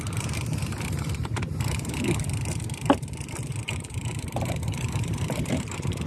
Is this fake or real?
fake